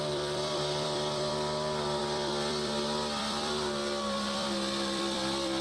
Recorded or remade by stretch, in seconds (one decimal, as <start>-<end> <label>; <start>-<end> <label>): 0.0-5.6 remade